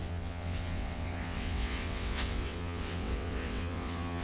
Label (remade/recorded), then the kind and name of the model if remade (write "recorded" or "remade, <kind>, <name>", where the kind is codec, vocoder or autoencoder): remade, vocoder, WaveNeXt